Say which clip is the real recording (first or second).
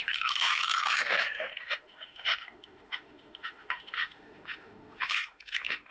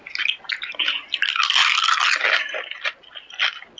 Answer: second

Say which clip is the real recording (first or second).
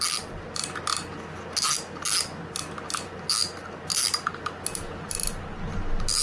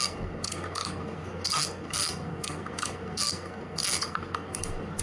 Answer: first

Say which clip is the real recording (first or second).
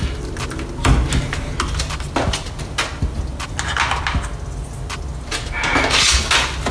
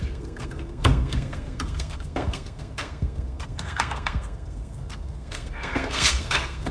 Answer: first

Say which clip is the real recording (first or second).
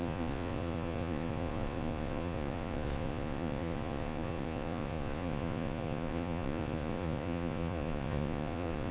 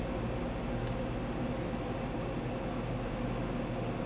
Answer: second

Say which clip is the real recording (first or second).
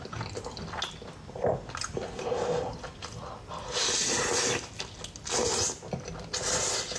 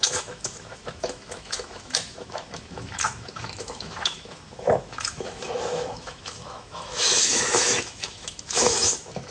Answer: first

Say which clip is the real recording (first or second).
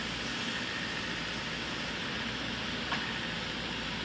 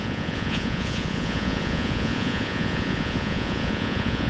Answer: first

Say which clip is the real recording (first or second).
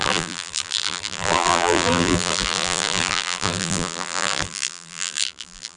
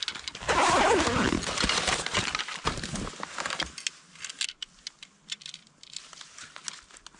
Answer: second